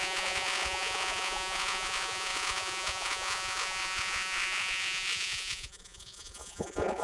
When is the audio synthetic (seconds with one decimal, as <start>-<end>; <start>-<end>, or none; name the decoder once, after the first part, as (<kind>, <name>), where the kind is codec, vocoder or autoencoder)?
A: 0.0-7.0 (vocoder, Vocos)